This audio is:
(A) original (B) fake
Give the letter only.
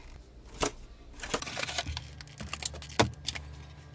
A